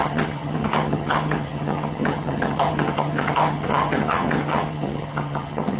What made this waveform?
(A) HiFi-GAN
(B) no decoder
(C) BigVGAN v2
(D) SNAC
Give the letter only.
A